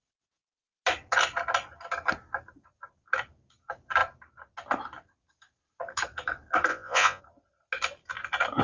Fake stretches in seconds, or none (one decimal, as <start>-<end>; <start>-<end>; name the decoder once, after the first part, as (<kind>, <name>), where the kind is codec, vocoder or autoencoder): 6.7-7.2 (vocoder, Vocos)

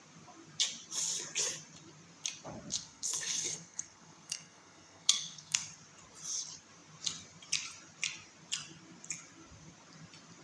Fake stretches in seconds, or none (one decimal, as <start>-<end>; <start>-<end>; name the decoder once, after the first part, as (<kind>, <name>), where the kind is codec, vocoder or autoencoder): 2.7-5.7 (codec, SNAC)

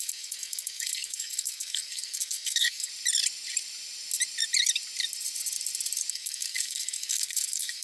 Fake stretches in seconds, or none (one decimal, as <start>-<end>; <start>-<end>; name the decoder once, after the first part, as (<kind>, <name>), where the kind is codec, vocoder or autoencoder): 0.0-2.9 (codec, SNAC); 6.1-7.8